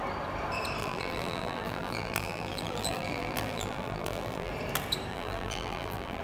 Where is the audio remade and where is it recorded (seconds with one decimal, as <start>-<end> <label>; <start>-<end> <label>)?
0.0-0.8 recorded; 0.8-4.5 remade; 4.5-5.1 recorded; 5.1-6.2 remade